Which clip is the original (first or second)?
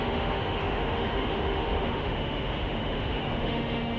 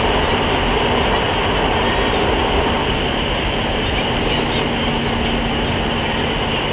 second